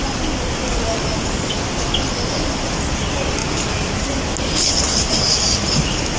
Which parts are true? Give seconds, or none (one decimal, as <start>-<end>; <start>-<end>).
0.0-6.2